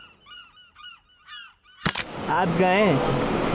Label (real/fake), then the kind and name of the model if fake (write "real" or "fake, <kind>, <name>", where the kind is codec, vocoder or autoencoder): real